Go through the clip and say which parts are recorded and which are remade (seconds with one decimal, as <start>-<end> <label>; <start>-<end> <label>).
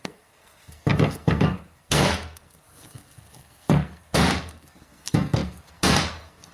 0.0-6.5 remade